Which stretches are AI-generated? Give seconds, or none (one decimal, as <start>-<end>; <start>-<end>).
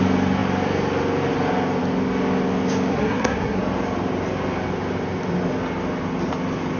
2.9-3.6